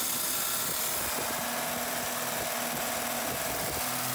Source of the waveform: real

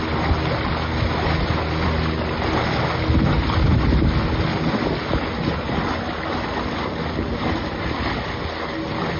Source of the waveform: real